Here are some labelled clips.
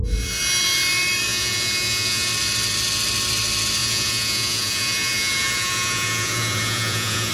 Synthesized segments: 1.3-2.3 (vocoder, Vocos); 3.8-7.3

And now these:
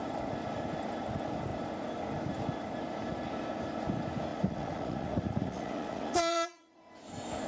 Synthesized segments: 4.3-6.9 (vocoder, Vocos)

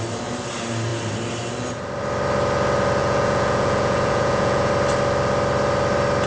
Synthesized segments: 3.0-4.7 (vocoder, Vocos)

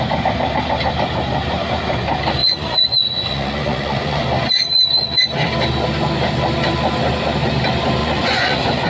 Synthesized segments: 2.4-4.2 (vocoder, Vocos); 8.0-8.9

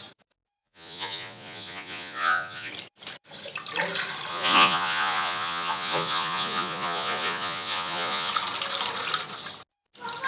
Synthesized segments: 0.6-2.7 (vocoder, Vocos); 4.3-8.3

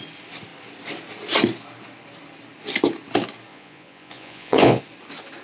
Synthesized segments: 3.5-4.8 (vocoder, Vocos)

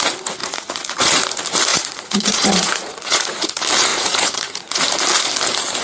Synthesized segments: 0.4-1.1 (vocoder, Vocos); 1.7-3.5; 3.9-4.8

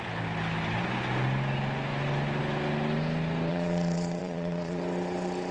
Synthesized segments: 3.5-4.8 (vocoder, Vocos)